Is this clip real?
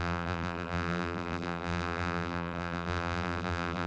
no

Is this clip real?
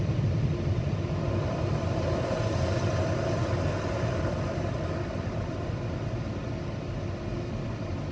yes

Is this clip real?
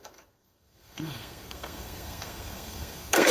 no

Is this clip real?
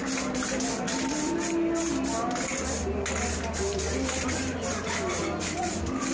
yes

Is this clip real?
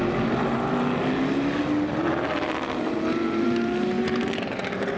yes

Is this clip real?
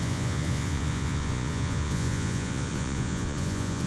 no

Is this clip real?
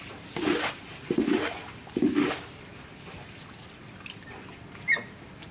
yes